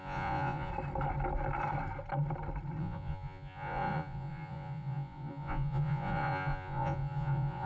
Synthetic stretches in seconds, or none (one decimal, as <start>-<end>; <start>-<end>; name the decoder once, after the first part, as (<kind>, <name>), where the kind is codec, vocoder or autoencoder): 0.0-0.7 (vocoder, Vocos); 2.8-7.7